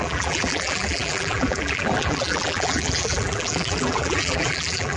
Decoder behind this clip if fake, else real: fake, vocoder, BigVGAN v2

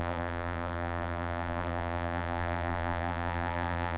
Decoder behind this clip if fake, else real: fake, vocoder, BigVGAN v2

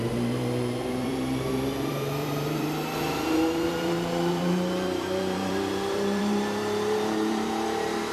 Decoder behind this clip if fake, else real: fake, vocoder, BigVGAN v2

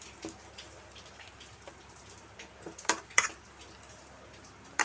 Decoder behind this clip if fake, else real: fake, vocoder, BigVGAN v2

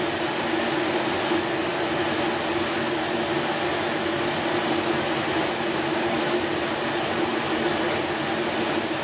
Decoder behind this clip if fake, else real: real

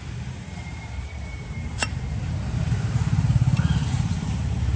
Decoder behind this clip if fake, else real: fake, vocoder, BigVGAN v2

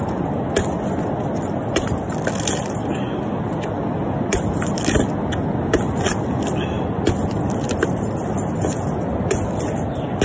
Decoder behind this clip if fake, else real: real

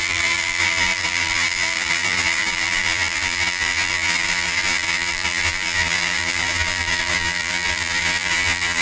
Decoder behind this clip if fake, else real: fake, vocoder, BigVGAN v2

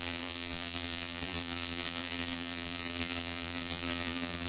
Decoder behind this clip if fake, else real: fake, vocoder, BigVGAN v2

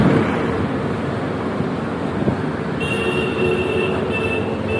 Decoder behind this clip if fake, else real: real